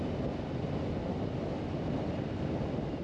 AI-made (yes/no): no